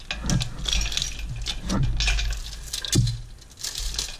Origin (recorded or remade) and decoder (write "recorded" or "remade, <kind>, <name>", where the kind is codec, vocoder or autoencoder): recorded